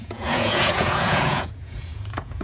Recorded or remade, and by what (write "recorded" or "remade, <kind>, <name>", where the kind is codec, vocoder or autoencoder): remade, vocoder, Vocos